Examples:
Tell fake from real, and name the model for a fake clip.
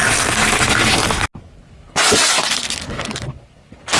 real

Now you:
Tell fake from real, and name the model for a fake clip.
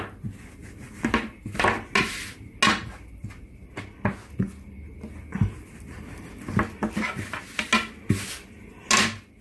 real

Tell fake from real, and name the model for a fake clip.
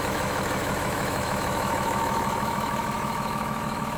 fake, autoencoder, DAC-VAE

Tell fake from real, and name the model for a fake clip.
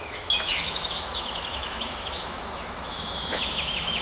fake, autoencoder, DAC-VAE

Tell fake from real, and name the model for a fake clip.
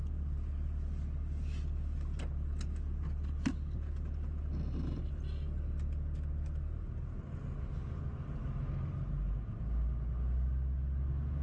real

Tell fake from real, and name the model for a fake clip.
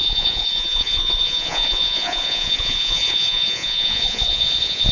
fake, vocoder, Vocos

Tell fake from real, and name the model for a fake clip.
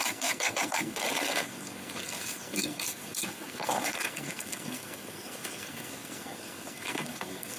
fake, codec, SNAC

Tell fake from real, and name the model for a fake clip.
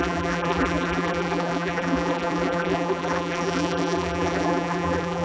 fake, vocoder, BigVGAN v2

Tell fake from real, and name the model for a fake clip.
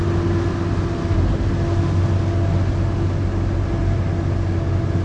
real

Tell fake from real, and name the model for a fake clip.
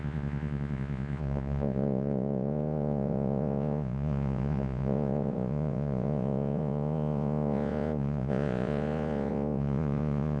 fake, vocoder, Vocos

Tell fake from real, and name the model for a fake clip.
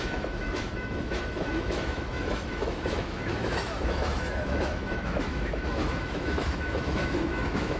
fake, autoencoder, DAC-VAE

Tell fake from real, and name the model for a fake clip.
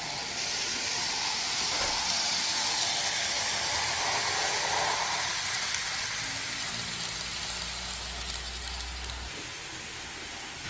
real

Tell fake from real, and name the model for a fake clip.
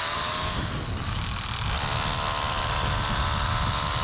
real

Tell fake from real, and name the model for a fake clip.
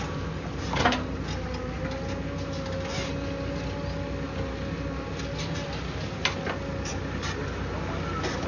real